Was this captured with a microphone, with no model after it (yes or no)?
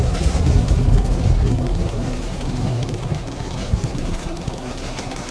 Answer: no